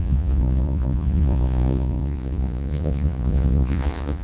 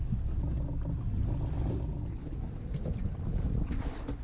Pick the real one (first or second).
second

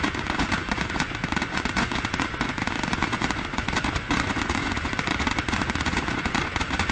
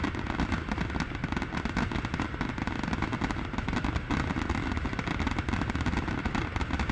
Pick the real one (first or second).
second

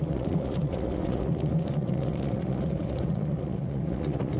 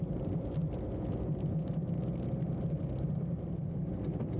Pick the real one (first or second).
second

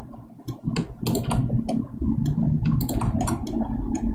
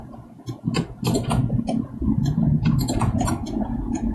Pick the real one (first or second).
first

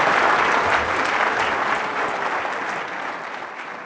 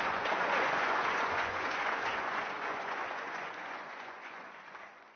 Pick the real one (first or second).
first